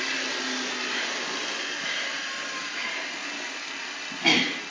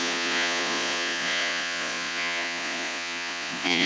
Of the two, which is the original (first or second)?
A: first